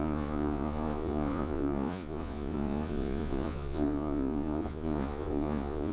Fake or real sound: fake